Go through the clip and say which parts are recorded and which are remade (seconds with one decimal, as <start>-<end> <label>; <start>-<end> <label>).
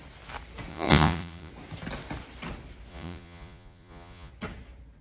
0.0-0.7 recorded; 0.7-1.5 remade; 1.5-2.9 recorded; 2.9-4.3 remade; 4.3-5.0 recorded